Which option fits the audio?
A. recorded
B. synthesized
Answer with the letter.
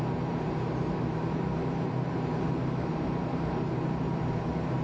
B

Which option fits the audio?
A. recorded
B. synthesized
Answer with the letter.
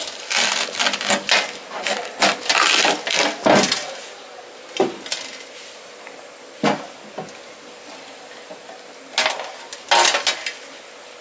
A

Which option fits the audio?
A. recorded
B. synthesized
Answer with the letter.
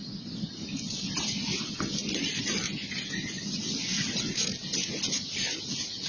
A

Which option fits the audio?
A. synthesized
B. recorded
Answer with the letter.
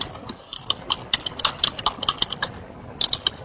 B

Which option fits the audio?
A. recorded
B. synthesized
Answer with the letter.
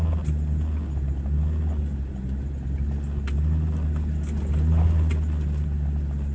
A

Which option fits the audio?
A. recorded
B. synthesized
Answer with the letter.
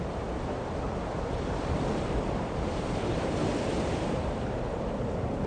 B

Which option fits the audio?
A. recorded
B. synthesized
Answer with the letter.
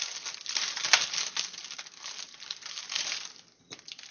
A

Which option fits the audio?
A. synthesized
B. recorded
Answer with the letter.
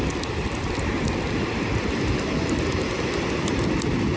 B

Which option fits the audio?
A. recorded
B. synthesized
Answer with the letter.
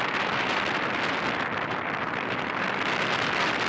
A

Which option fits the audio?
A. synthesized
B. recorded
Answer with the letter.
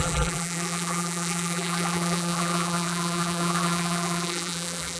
A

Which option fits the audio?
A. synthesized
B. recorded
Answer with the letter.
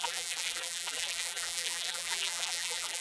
A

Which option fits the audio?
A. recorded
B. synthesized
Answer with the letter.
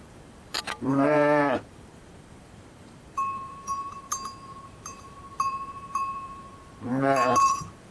B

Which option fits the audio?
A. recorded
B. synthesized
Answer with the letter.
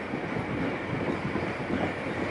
A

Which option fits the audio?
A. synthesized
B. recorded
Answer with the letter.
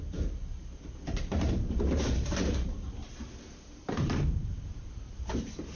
A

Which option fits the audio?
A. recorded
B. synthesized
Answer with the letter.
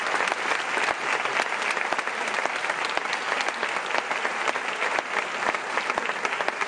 A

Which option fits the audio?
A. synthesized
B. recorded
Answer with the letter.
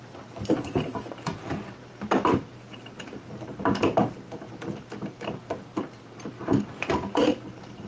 A